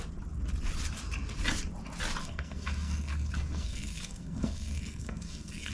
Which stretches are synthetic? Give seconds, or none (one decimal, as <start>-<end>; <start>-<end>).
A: 2.2-5.7